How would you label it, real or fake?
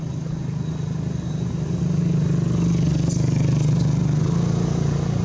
real